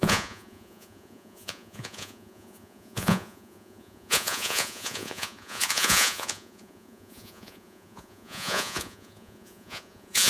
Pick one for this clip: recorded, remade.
remade